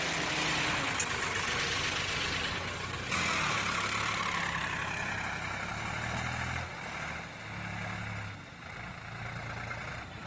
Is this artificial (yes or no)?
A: no